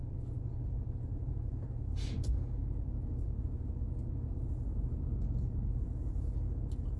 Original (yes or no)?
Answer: yes